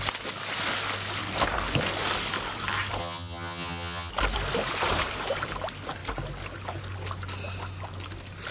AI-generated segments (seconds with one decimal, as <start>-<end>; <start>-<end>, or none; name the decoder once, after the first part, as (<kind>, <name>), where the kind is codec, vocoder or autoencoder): 3.0-4.1 (vocoder, HiFi-GAN)